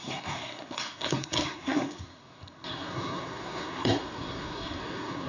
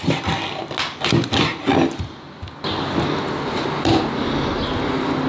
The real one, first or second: second